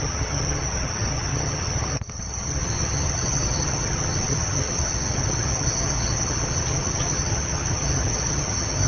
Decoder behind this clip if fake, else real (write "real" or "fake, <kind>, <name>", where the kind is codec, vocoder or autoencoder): fake, vocoder, HiFi-GAN